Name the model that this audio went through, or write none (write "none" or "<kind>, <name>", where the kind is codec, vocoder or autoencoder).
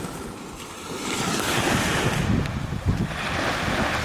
none